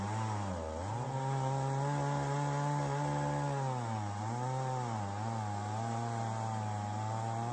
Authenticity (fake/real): real